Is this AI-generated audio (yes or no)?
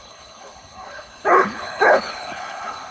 yes